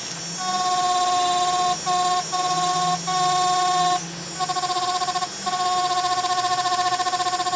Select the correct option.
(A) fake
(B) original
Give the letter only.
B